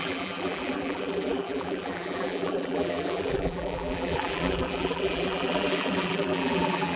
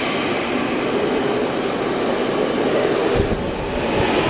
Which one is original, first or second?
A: second